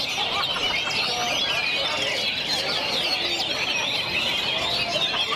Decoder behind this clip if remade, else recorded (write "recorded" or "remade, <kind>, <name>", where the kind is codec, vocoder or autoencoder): recorded